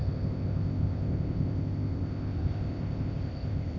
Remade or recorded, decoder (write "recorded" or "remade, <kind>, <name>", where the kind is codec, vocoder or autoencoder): remade, codec, ZipCodec